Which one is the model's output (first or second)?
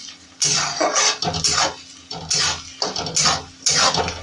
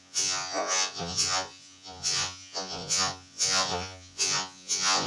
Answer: second